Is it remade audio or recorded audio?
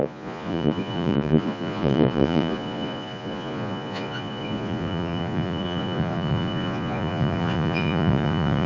remade